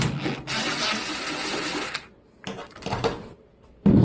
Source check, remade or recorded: recorded